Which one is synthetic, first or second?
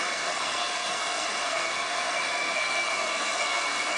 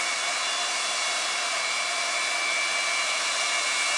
first